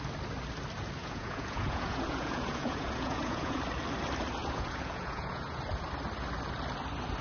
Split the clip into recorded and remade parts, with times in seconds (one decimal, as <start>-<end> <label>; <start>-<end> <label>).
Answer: 0.0-1.0 recorded; 1.0-3.6 remade; 3.6-4.4 recorded; 4.4-5.6 remade; 5.6-7.2 recorded